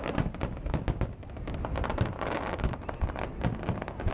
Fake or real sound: real